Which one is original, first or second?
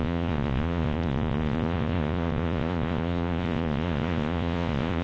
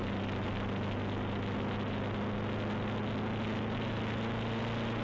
second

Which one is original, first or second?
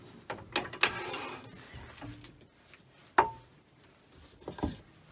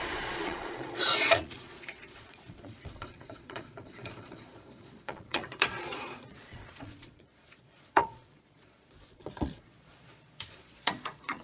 first